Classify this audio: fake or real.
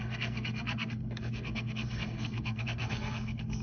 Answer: fake